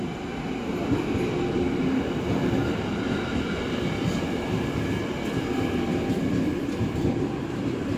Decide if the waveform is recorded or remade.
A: recorded